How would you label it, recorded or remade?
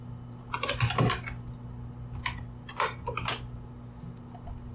recorded